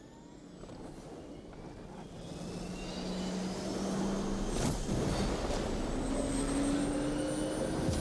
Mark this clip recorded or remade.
recorded